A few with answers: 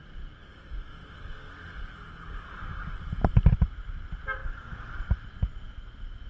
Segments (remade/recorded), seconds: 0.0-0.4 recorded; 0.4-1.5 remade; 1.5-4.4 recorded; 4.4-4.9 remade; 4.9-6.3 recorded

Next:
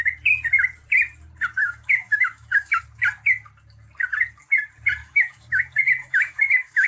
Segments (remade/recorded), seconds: 0.0-1.6 recorded; 1.6-2.8 remade; 2.8-5.0 recorded; 5.0-5.6 remade; 5.6-6.0 recorded; 6.0-6.9 remade

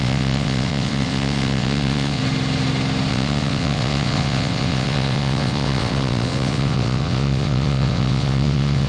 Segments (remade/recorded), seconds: 0.0-2.2 remade; 2.2-3.1 recorded; 3.1-8.9 remade

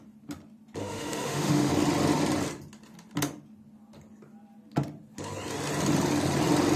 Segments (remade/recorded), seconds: 0.0-0.8 recorded; 0.8-1.7 remade; 1.7-6.8 recorded